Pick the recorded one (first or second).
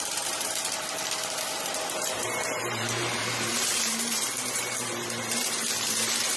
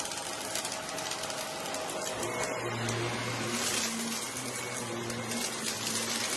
second